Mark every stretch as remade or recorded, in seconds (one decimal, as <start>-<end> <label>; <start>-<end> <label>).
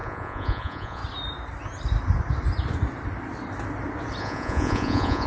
0.0-1.0 remade; 1.0-4.2 recorded; 4.2-5.3 remade